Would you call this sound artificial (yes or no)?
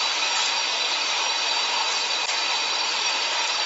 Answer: yes